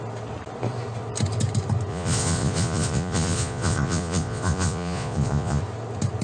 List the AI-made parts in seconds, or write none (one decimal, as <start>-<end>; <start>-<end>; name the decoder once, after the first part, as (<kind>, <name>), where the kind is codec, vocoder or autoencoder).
1.9-5.6 (vocoder, Vocos)